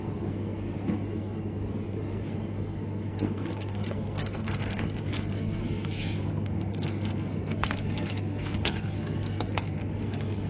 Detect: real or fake fake